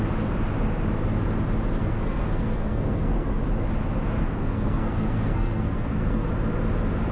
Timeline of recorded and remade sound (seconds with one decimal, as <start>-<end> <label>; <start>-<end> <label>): 0.0-1.8 recorded; 1.8-3.4 remade; 3.4-4.2 recorded; 4.2-6.3 remade; 6.3-7.1 recorded